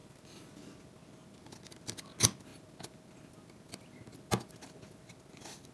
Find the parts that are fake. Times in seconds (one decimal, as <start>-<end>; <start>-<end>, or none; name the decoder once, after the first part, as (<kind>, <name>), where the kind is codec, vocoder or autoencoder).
none